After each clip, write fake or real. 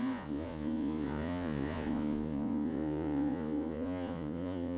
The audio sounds fake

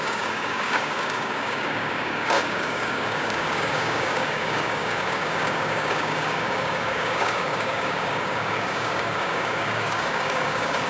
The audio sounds fake